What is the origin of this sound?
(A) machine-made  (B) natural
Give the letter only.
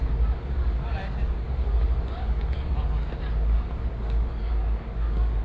A